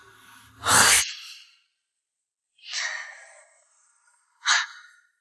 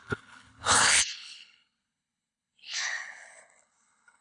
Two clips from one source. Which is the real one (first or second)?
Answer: first